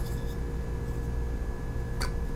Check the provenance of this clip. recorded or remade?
recorded